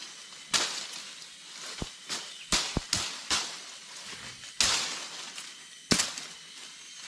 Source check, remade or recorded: recorded